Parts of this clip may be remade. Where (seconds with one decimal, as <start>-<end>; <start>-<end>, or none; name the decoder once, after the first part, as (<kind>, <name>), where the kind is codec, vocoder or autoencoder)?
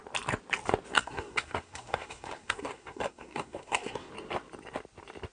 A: 0.9-4.1 (codec, SNAC)